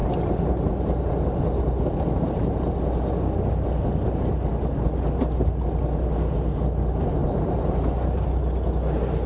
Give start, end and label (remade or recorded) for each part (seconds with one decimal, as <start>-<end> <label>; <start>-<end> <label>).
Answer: 0.0-1.1 remade; 1.1-9.3 recorded